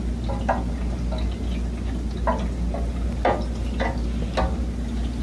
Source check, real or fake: real